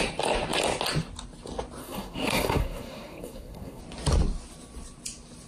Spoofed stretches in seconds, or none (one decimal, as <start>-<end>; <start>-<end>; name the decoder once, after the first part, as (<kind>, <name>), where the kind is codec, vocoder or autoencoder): 1.8-3.8 (codec, SNAC)